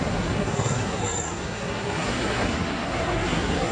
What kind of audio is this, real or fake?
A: fake